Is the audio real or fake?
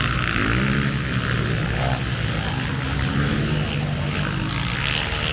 real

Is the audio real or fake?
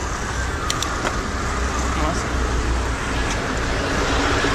real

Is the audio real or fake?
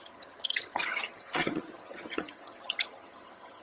fake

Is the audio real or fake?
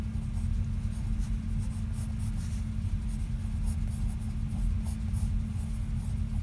real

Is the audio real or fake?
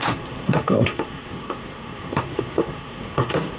fake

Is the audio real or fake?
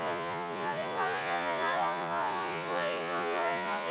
fake